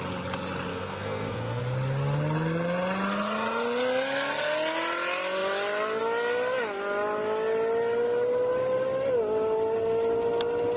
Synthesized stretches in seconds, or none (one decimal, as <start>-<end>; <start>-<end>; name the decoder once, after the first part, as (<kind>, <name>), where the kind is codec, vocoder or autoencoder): 0.7-1.6 (codec, SNAC)